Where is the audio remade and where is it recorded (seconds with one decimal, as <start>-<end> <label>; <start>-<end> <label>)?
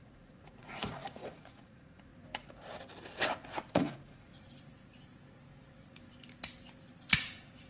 0.0-2.1 remade; 2.1-3.7 recorded; 3.7-4.3 remade; 4.3-7.7 recorded